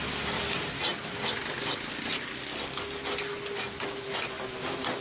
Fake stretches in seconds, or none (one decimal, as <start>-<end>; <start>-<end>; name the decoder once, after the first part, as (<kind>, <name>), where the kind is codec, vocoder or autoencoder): none